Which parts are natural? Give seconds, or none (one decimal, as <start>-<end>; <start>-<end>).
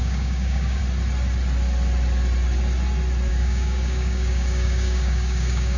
0.8-3.3